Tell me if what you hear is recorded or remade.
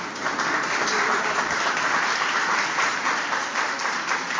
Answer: remade